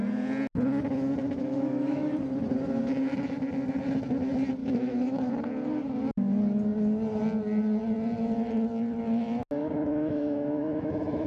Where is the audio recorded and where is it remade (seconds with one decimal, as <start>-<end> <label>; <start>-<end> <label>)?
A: 0.0-1.2 recorded; 1.2-2.1 remade; 2.1-4.6 recorded; 4.6-5.3 remade; 5.3-9.6 recorded; 9.6-11.3 remade